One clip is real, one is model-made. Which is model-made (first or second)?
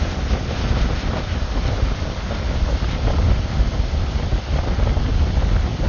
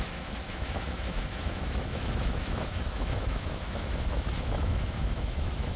second